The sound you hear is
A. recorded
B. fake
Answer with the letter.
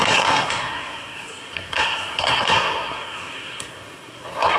B